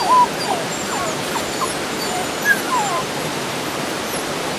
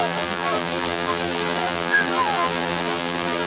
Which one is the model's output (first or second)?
second